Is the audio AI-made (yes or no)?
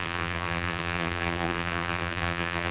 yes